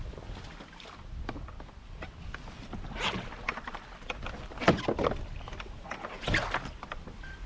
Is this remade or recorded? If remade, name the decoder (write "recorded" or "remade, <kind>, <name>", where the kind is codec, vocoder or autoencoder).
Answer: recorded